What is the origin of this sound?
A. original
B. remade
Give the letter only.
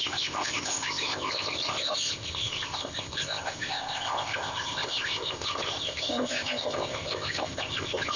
B